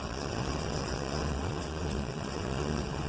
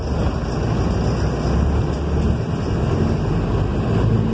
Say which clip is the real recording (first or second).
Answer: second